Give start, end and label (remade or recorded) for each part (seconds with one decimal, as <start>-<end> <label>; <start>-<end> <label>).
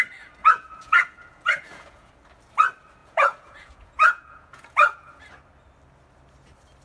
0.0-0.4 recorded; 0.4-2.1 remade; 2.1-3.0 recorded; 3.0-5.2 remade; 5.2-6.8 recorded